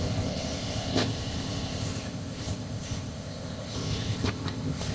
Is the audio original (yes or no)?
no